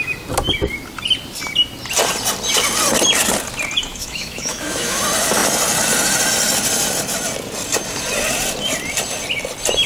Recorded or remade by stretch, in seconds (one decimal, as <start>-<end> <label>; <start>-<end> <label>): 0.0-3.9 recorded; 3.9-5.0 remade; 5.0-9.9 recorded